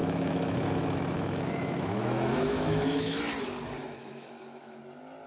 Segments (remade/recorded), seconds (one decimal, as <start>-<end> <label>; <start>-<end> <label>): 0.0-3.2 remade; 3.2-4.0 recorded; 4.0-4.8 remade; 4.8-5.3 recorded